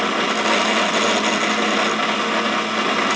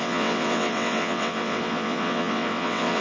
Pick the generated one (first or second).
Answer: second